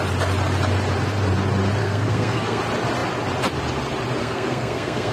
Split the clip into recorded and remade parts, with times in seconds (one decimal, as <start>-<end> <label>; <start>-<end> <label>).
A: 0.0-1.8 recorded; 1.8-2.6 remade; 2.6-4.2 recorded; 4.2-5.1 remade